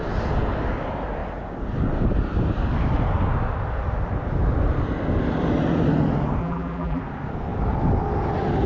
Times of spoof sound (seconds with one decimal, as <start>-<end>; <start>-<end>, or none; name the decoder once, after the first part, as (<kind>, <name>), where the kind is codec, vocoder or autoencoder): 6.4-7.0 (vocoder, BigVGAN v2)